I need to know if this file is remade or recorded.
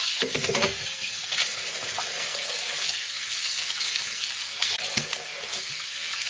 remade